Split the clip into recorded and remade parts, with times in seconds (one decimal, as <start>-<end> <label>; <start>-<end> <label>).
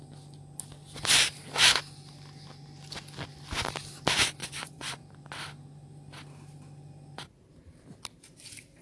0.0-4.4 recorded; 4.4-5.0 remade; 5.0-8.8 recorded